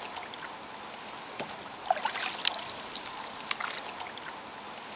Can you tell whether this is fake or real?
real